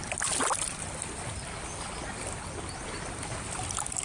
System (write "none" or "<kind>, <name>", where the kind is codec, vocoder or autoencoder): none